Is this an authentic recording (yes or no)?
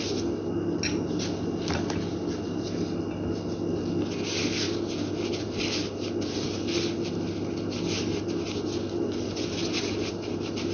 yes